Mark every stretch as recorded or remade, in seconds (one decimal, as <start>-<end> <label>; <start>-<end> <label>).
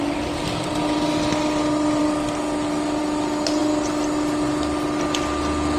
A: 0.0-5.8 recorded